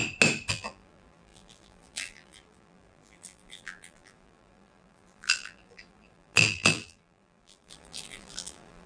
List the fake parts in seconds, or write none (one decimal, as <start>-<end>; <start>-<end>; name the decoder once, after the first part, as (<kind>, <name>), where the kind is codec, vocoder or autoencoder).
0.5-8.9 (vocoder, BigVGAN v2)